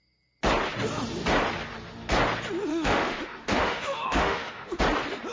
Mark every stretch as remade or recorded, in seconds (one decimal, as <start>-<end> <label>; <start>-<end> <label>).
0.0-2.7 recorded; 2.7-4.8 remade; 4.8-5.3 recorded